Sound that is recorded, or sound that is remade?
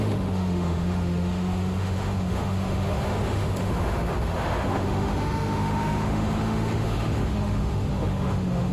remade